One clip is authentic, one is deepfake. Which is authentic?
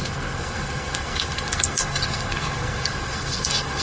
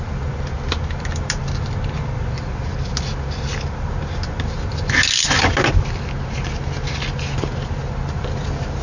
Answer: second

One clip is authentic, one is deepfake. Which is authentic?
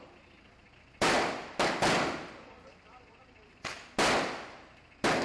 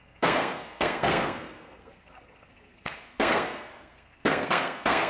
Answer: first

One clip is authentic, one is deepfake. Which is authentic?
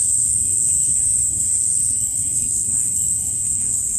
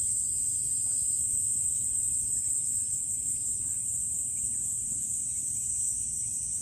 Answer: second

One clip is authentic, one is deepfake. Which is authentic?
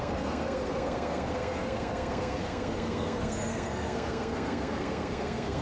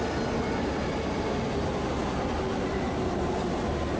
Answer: second